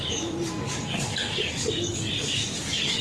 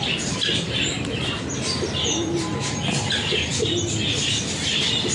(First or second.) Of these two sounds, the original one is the second